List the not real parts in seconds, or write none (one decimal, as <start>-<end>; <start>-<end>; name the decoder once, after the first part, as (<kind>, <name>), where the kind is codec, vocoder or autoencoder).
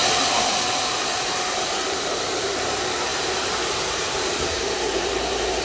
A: 0.7-5.6 (vocoder, BigVGAN v2)